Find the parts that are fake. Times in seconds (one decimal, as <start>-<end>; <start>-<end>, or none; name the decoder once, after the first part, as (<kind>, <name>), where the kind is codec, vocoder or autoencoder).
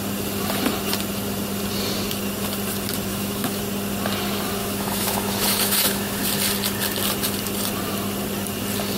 3.1-3.6 (autoencoder, DAC-VAE); 4.6-6.2